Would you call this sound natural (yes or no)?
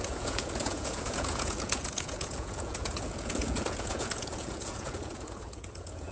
no